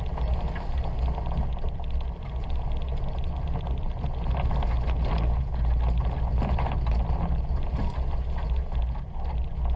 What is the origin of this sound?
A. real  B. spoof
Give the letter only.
A